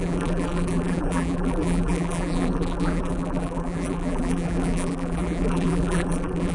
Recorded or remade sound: remade